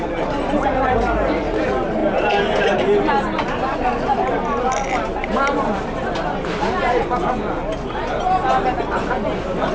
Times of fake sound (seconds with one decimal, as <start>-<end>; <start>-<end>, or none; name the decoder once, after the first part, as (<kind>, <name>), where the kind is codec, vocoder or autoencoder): none